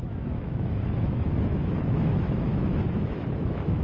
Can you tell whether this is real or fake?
fake